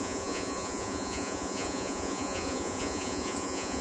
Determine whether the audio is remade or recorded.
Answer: remade